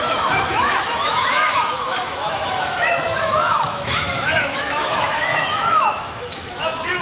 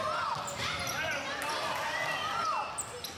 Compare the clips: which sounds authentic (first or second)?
second